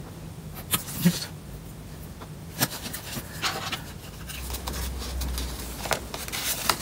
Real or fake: real